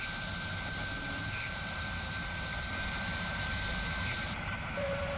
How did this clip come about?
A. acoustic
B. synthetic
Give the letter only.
B